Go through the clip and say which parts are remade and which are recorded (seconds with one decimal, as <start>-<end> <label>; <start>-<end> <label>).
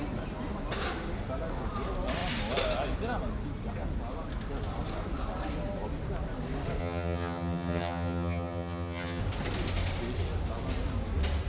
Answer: 0.0-6.8 recorded; 6.8-9.2 remade; 9.2-11.5 recorded